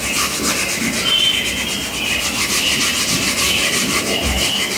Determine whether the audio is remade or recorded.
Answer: recorded